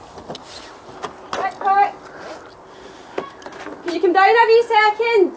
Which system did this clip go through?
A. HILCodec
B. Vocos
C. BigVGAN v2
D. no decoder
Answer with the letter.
D